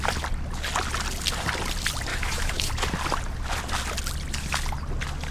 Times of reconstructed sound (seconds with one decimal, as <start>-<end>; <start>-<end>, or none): 2.1-2.7